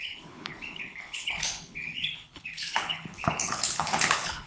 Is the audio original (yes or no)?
no